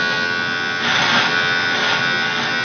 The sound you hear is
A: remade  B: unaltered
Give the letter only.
B